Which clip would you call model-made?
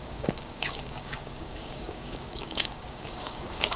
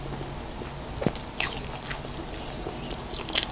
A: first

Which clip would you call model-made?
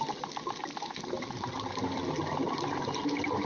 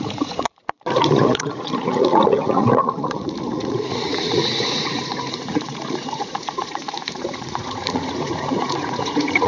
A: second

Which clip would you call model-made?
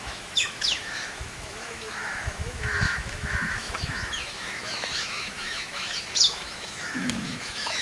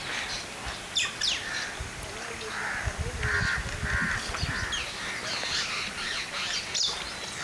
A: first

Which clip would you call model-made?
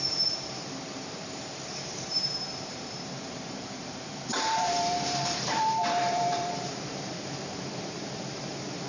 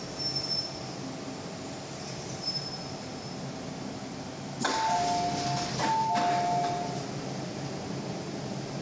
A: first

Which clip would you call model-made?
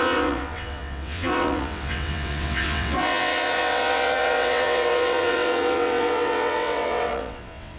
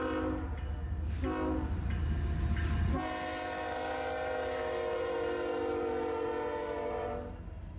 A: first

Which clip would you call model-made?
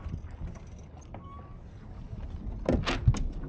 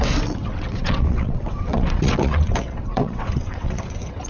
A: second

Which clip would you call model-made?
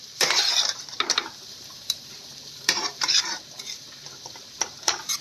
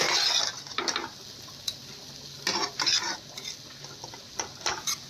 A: first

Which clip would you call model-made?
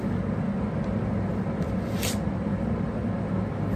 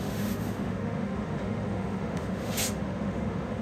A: second